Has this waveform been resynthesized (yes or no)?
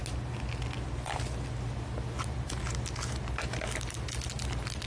no